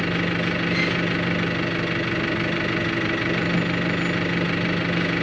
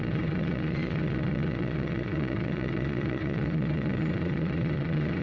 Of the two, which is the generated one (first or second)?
second